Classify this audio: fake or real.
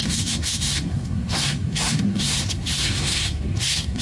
fake